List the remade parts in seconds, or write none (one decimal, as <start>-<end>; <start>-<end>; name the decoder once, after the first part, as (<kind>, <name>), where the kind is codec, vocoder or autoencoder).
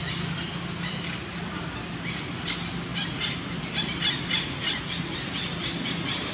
none